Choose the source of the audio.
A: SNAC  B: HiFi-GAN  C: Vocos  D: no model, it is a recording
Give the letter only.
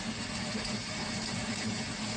D